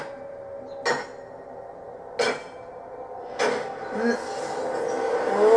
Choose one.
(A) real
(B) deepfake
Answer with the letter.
A